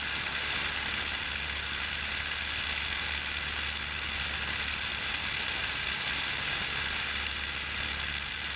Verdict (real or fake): real